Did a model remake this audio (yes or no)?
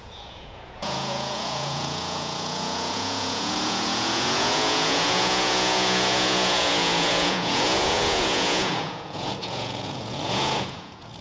yes